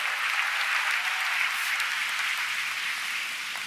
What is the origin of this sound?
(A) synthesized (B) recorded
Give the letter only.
B